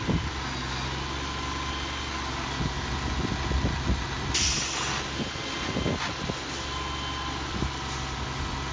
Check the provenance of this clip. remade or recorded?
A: recorded